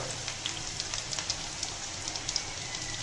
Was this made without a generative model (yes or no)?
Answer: yes